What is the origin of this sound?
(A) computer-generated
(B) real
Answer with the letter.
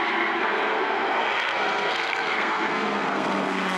A